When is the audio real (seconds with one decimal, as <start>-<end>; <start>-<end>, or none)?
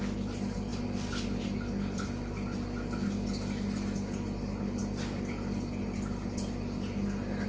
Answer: 0.0-7.5